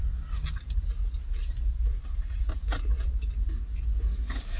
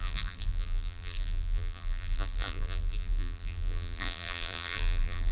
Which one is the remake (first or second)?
second